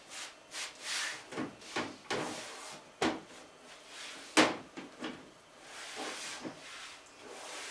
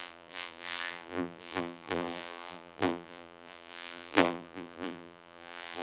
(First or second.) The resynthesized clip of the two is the second